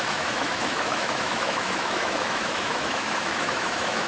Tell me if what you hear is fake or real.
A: fake